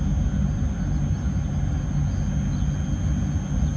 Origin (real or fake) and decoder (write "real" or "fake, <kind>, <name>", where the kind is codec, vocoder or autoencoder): real